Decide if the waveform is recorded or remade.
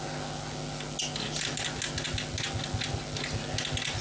recorded